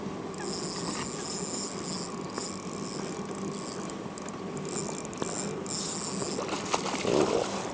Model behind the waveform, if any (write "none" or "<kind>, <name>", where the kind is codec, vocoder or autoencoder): none